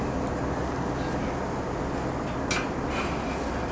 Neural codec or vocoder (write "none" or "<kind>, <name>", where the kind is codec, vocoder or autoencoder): none